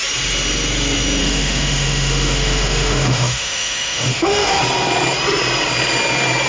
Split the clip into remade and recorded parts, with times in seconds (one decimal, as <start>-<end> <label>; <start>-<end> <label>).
0.0-1.2 recorded; 1.2-4.6 remade; 4.6-6.5 recorded